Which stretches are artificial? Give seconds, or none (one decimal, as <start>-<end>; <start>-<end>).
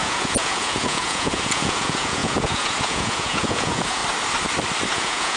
0.0-4.0; 4.9-5.4